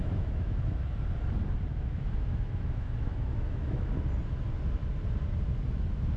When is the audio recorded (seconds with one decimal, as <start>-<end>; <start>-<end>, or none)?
0.9-1.7; 3.9-6.2